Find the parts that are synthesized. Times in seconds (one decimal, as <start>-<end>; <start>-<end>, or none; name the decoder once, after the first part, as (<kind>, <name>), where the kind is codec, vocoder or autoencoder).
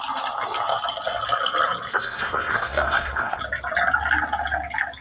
1.9-3.4 (codec, SNAC)